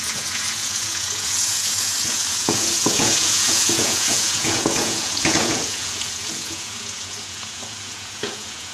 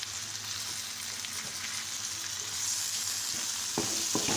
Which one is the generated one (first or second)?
first